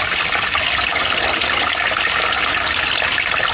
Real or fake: real